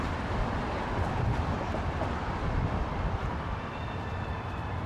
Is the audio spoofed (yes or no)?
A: yes